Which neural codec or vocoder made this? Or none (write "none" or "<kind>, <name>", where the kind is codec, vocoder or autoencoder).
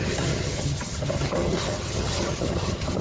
vocoder, HiFi-GAN